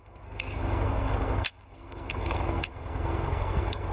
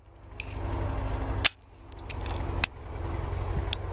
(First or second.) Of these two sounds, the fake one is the first